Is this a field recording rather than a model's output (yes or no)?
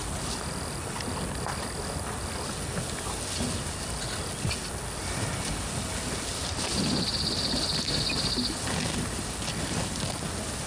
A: yes